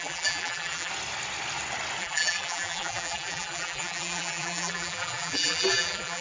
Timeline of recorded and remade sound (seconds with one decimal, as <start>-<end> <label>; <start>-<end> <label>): 0.0-0.9 remade; 0.9-2.0 recorded; 2.0-6.2 remade